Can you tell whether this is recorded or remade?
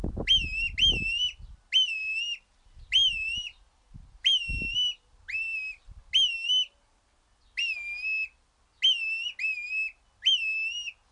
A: recorded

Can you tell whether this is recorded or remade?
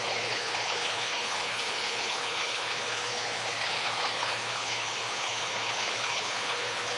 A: remade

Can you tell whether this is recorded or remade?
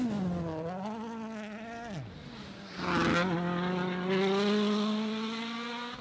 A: recorded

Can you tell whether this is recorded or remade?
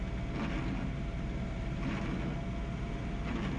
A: recorded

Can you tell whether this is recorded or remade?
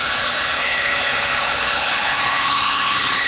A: remade